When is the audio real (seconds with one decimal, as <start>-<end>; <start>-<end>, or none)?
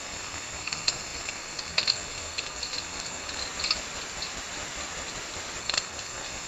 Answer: 3.4-5.6